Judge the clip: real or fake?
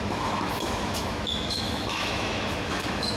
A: fake